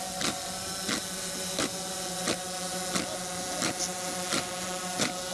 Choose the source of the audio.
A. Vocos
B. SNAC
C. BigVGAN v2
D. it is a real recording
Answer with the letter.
D